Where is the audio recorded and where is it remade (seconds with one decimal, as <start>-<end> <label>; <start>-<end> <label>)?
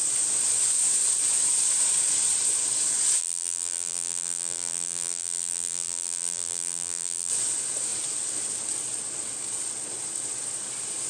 0.0-3.2 recorded; 3.2-7.3 remade; 7.3-11.1 recorded